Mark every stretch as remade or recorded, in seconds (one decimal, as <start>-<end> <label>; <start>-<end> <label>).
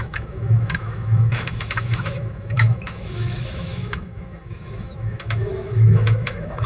0.0-6.7 remade